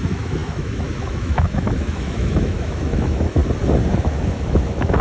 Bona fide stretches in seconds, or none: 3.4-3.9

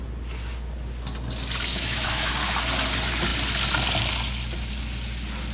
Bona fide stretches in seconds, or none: 0.0-1.7; 2.3-5.5

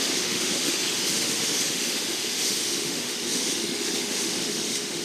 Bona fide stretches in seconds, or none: none

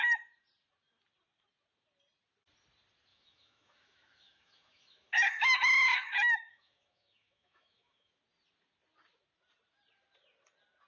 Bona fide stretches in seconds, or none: 0.0-3.1; 8.1-10.9